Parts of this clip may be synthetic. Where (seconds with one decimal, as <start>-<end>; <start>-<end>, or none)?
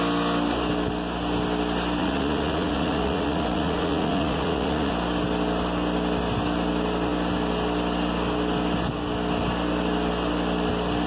2.0-4.9